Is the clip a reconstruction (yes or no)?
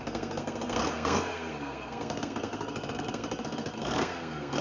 yes